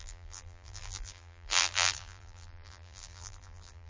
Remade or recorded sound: remade